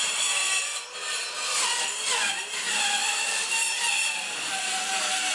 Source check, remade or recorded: recorded